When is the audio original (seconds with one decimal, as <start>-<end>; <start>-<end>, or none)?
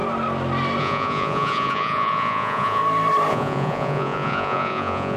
0.0-0.8; 2.8-3.3